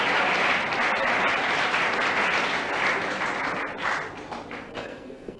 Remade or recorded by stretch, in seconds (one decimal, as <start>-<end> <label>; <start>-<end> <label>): 0.0-4.7 recorded; 4.7-5.4 remade